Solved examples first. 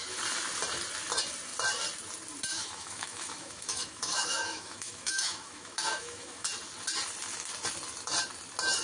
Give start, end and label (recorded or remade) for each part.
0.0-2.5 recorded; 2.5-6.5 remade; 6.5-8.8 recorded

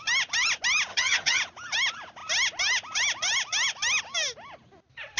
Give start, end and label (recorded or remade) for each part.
0.0-0.9 recorded; 0.9-1.4 remade; 1.4-5.2 recorded

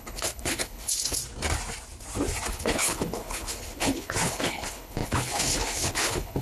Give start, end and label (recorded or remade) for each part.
0.0-1.2 remade; 1.2-2.5 recorded; 2.5-6.4 remade

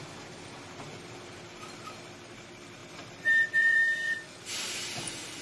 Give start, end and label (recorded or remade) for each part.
0.0-2.8 recorded; 2.8-5.4 remade

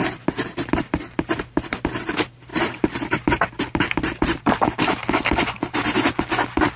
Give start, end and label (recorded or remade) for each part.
0.0-0.7 recorded; 0.7-6.8 remade